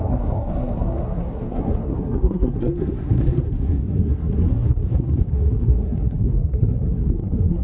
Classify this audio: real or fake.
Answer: fake